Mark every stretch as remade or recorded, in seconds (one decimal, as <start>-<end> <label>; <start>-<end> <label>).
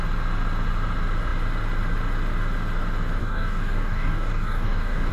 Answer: 0.0-3.2 recorded; 3.2-5.1 remade